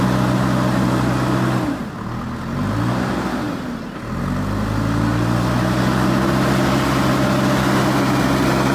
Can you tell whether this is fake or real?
real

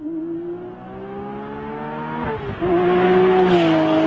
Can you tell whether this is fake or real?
real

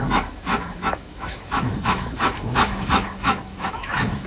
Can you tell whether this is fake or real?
fake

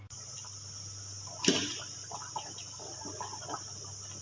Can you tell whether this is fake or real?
real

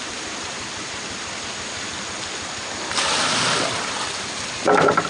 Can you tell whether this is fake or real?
real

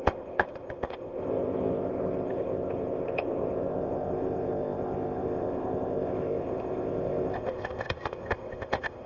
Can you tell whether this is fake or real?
fake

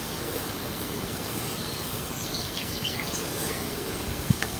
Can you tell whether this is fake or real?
fake